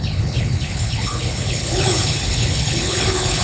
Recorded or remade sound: remade